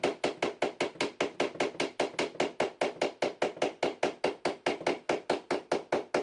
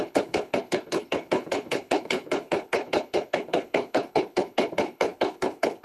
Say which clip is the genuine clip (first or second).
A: first